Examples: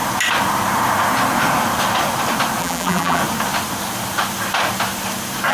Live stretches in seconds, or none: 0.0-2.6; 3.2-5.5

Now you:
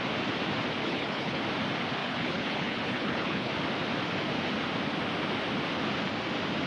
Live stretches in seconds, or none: 0.0-0.8; 1.4-2.0; 3.5-6.7

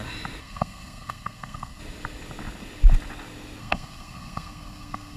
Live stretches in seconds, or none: 0.0-0.4; 1.8-3.6

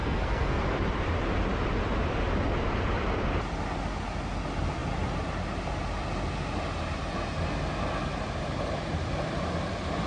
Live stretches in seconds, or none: 0.6-10.1